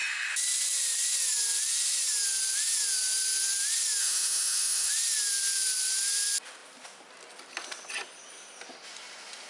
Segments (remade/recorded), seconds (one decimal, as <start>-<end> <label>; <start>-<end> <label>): 0.0-4.0 recorded; 4.0-4.9 remade; 4.9-9.5 recorded